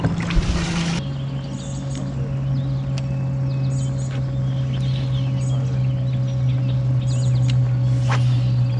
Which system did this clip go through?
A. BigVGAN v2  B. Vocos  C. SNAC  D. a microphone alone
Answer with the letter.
D